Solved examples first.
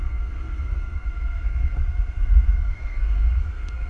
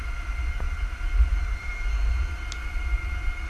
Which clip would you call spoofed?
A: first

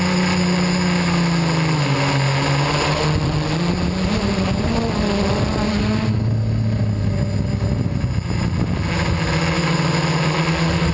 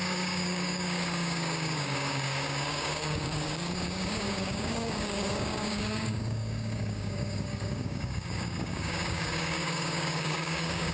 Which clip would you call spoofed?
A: second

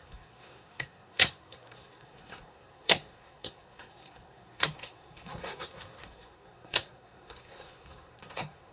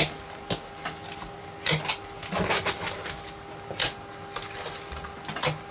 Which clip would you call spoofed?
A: first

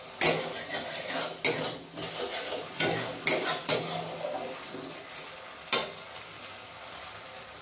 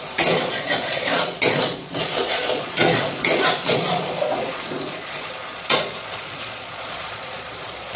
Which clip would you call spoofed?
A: second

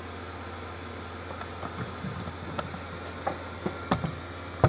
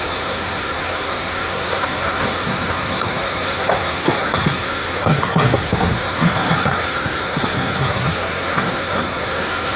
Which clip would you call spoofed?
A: second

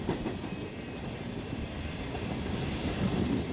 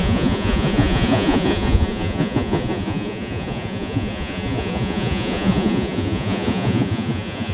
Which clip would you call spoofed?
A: second